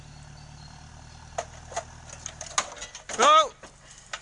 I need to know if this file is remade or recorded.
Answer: recorded